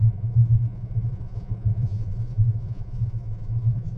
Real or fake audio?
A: fake